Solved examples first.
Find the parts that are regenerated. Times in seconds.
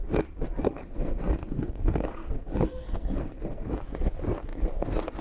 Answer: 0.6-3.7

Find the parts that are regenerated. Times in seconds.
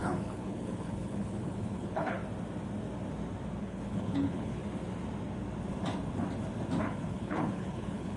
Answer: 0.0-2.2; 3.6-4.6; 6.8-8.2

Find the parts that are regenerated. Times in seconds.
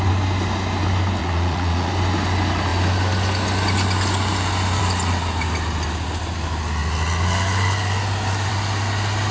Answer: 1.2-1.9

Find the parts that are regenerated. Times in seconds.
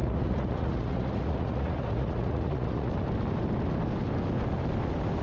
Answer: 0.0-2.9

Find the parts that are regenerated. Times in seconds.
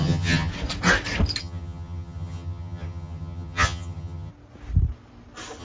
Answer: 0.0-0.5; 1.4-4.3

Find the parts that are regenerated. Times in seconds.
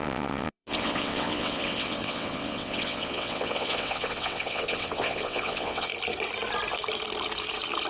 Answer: 0.0-5.9